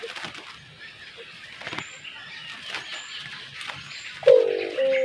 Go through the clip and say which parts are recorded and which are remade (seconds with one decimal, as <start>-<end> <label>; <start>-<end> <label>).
0.0-5.0 recorded